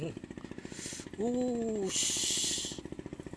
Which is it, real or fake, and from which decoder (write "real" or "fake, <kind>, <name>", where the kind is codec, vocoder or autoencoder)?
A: real